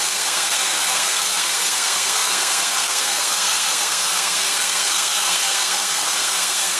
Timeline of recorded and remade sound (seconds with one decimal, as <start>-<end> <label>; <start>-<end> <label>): 0.0-6.8 remade